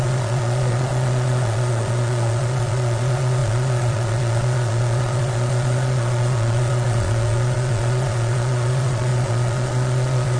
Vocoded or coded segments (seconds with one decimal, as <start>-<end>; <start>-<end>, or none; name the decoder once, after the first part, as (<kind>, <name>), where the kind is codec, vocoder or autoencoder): 0.0-10.4 (vocoder, Vocos)